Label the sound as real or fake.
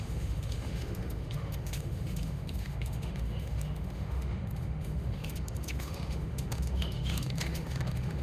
fake